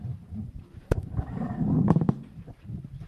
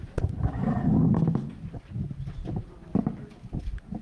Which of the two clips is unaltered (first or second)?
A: second